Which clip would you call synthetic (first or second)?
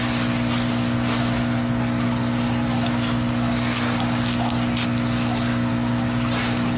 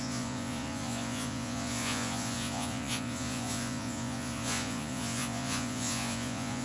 second